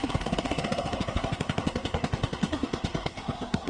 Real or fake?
fake